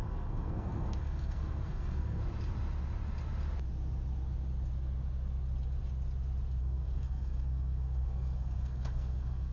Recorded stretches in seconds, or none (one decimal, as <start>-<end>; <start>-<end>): 2.2-6.6